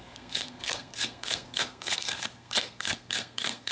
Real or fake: fake